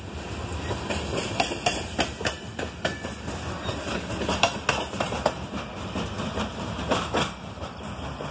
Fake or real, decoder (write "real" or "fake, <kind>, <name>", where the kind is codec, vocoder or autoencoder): real